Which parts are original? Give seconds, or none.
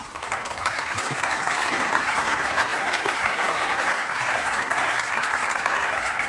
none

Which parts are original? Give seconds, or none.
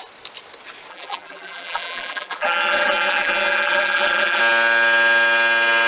0.0-0.9; 4.4-5.9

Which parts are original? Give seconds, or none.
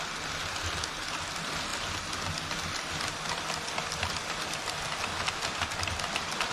0.0-6.5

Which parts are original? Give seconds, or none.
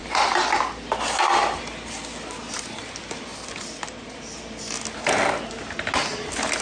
0.0-6.6